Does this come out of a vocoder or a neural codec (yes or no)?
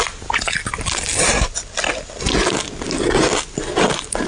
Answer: no